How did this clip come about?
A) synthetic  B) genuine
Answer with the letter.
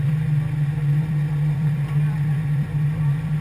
A